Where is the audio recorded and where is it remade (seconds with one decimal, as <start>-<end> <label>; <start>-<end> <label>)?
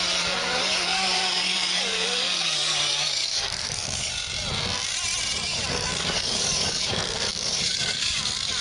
0.0-0.4 recorded; 0.4-4.1 remade; 4.1-5.5 recorded; 5.5-8.6 remade